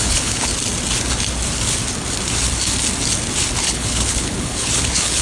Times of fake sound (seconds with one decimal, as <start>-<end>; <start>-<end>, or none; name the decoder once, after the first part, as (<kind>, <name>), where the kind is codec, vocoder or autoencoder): 0.0-0.5 (codec, HILCodec); 3.6-5.2